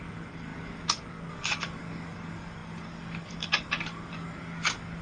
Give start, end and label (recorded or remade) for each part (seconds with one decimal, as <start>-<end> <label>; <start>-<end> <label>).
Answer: 0.0-5.0 remade